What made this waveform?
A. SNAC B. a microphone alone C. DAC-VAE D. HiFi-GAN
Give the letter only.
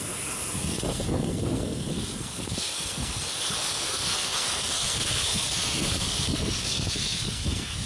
A